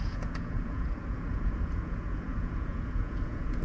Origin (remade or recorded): remade